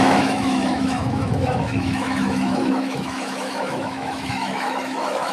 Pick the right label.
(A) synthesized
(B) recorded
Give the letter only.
A